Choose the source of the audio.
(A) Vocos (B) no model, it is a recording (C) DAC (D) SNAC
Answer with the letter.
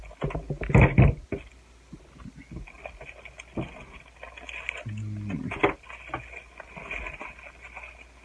B